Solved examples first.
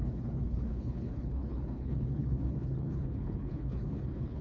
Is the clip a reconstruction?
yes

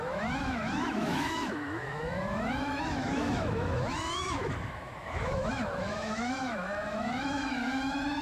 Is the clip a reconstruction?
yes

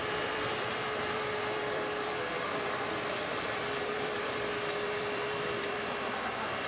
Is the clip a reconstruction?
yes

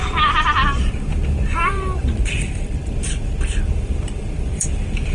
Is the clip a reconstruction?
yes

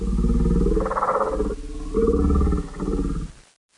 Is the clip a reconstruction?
no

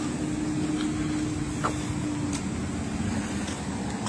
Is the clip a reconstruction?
no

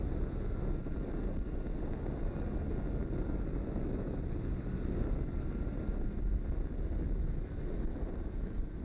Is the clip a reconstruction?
no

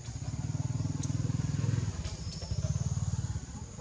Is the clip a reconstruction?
no